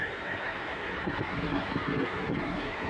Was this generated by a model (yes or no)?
yes